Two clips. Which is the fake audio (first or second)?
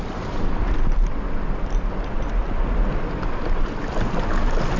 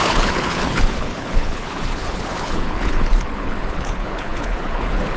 second